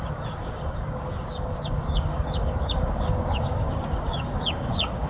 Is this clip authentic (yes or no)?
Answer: no